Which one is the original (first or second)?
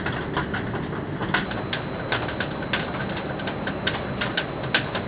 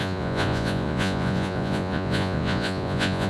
first